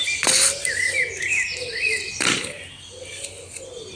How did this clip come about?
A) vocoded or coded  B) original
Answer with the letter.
B